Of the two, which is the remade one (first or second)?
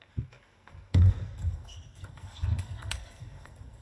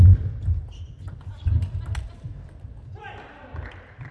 first